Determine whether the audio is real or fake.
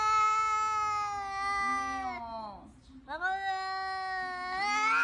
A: real